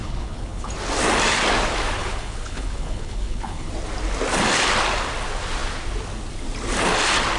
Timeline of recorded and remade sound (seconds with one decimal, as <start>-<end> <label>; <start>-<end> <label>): 0.0-0.7 remade; 0.7-2.0 recorded; 2.0-3.7 remade; 3.7-7.4 recorded